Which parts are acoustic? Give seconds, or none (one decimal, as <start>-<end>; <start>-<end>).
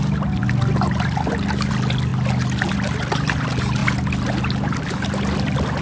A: 0.0-5.8